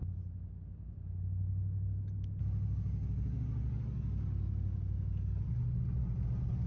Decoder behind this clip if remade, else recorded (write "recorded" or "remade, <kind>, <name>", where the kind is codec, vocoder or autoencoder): recorded